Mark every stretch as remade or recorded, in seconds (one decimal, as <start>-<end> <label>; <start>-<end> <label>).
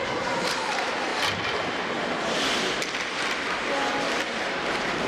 0.0-1.1 remade; 1.1-4.2 recorded; 4.2-5.1 remade